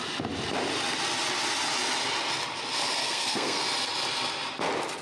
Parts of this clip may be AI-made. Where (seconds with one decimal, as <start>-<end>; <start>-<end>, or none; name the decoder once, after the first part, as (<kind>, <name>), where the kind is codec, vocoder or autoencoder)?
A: 3.0-3.6 (codec, SNAC)